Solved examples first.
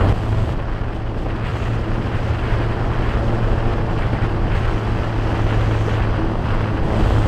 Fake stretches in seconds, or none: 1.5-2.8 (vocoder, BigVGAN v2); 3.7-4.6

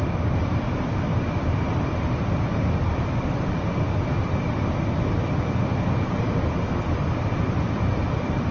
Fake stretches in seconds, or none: 0.0-8.5 (vocoder, BigVGAN v2)

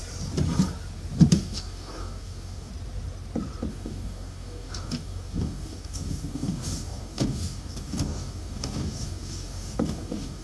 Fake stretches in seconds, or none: 1.3-2.7 (codec, DAC); 3.7-10.4

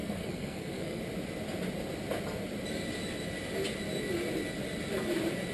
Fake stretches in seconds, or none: 0.0-1.0 (codec, SNAC)

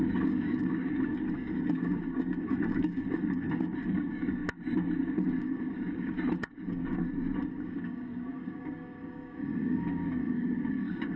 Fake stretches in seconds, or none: 0.0-4.4 (codec, DAC); 5.3-11.2